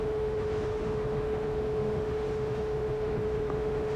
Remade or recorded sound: remade